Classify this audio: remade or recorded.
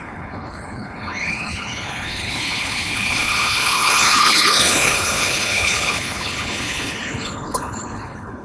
remade